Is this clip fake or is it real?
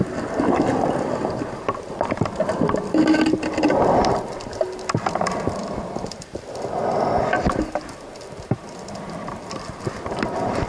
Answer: real